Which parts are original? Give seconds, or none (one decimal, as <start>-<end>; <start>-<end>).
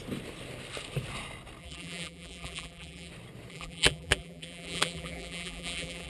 0.0-1.6; 3.1-3.5